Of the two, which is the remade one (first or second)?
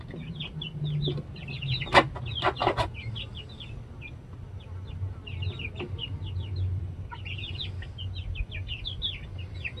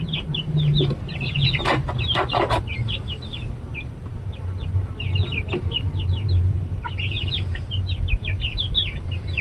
second